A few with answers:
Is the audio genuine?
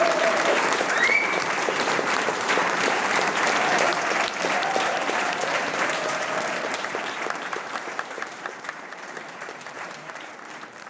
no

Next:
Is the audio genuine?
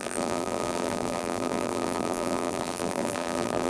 no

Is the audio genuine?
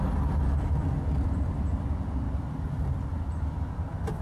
yes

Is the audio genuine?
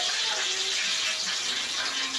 yes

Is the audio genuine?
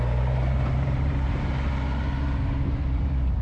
no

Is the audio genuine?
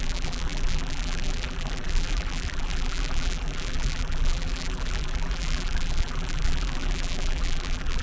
no